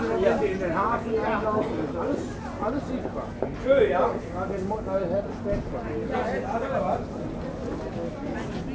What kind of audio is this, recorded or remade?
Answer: recorded